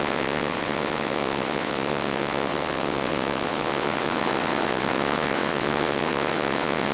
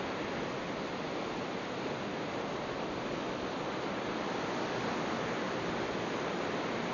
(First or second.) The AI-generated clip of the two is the first